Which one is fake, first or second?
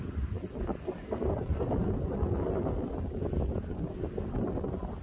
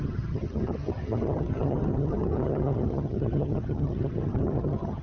second